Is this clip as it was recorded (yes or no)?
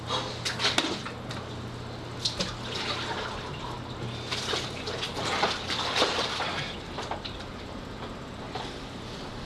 yes